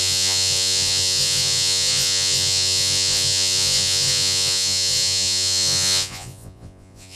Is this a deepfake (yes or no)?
yes